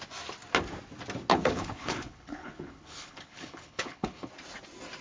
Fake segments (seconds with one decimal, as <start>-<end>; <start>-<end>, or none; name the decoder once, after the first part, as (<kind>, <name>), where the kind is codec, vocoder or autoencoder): 1.3-4.3 (codec, HILCodec)